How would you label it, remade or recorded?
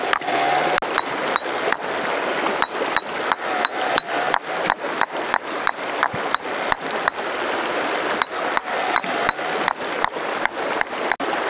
recorded